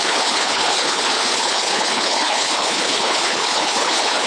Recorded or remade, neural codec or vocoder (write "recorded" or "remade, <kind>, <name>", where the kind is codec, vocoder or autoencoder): remade, codec, HILCodec